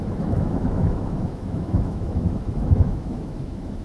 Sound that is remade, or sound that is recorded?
remade